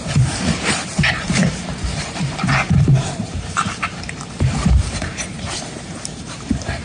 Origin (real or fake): fake